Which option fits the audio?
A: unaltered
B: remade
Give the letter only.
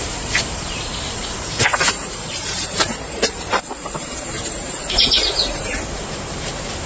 B